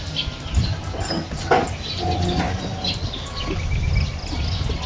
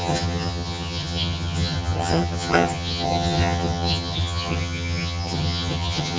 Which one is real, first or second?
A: first